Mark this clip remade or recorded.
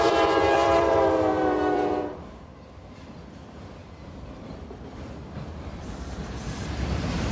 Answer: remade